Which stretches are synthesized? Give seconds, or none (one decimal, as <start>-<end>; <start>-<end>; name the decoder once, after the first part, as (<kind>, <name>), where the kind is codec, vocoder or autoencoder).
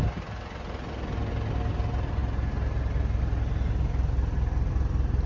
none